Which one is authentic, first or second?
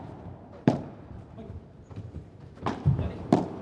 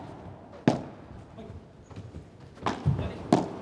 second